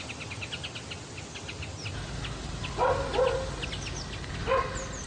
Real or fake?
real